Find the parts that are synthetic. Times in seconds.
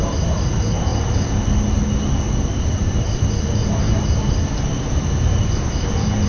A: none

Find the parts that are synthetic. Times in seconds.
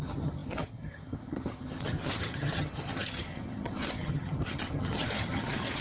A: 0.0-5.8 (vocoder, HiFi-GAN)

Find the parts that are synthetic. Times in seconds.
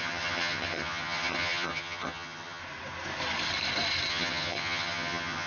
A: 0.0-2.6 (vocoder, HiFi-GAN); 4.1-5.5